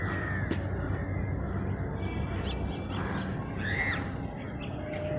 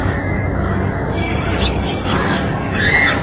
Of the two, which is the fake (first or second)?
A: second